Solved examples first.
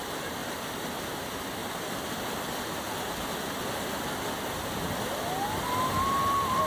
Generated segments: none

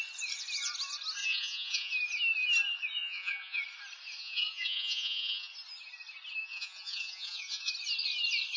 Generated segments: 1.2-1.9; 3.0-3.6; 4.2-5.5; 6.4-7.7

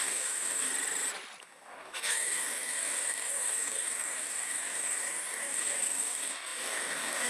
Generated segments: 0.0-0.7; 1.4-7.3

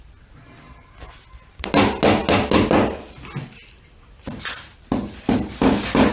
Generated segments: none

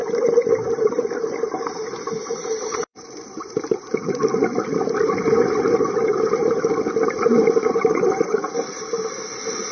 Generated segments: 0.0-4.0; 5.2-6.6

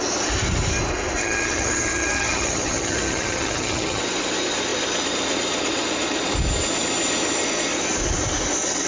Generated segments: 1.2-4.0

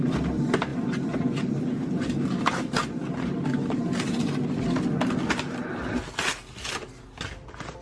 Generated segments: none

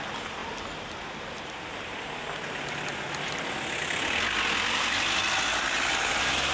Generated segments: none